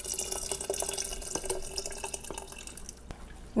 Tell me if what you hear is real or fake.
real